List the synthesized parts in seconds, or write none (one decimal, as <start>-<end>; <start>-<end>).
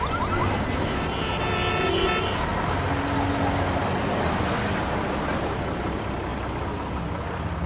none